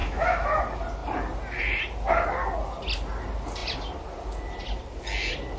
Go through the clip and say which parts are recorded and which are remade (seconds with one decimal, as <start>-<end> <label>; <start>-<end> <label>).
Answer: 0.0-0.6 remade; 0.6-5.6 recorded